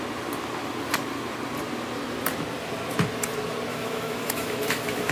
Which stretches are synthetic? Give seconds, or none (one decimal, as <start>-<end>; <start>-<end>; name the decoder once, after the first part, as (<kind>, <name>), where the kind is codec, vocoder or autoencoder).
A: 3.7-5.1 (autoencoder, DAC-VAE)